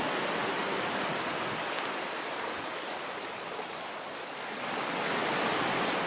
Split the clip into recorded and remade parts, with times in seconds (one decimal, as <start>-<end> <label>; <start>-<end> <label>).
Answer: 0.0-6.1 recorded